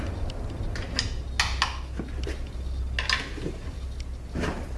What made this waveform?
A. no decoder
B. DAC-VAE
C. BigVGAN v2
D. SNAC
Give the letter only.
A